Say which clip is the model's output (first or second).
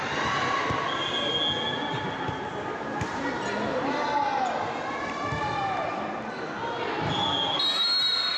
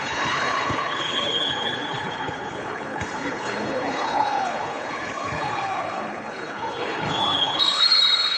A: second